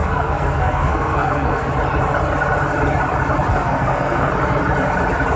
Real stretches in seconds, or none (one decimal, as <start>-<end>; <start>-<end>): 1.7-3.5; 4.3-5.4